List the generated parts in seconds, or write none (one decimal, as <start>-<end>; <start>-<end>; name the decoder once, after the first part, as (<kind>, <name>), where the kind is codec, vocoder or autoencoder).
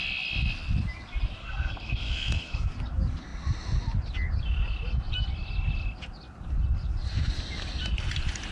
1.4-2.7 (codec, SNAC)